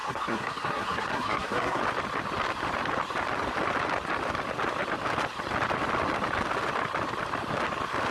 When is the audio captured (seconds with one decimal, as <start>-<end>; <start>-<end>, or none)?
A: 1.8-8.1